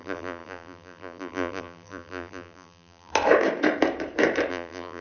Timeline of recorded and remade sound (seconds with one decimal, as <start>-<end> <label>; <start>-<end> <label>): 0.0-3.1 remade; 3.1-4.5 recorded; 4.5-5.0 remade